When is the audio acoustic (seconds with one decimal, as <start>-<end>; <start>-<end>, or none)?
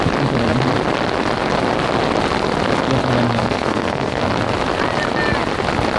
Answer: 0.0-3.4; 4.2-6.0